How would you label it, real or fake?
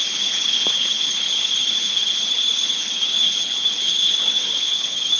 fake